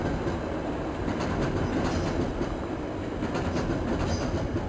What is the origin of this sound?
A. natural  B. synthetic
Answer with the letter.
A